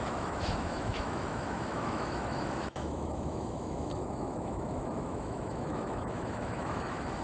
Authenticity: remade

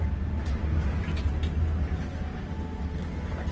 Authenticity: recorded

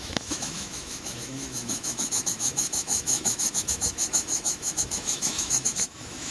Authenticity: remade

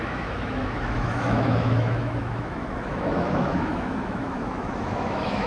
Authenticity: remade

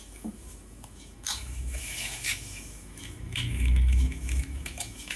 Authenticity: remade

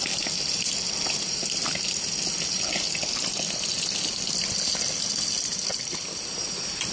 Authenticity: recorded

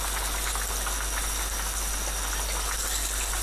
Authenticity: recorded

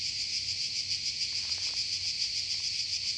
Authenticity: recorded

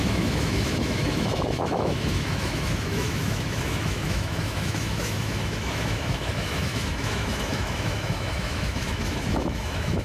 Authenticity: remade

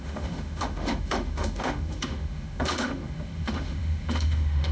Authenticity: remade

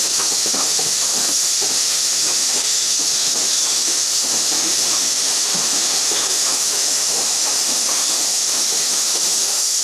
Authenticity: remade